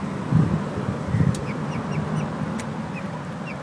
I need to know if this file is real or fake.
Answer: real